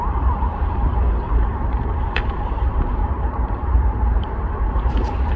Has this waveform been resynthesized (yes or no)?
yes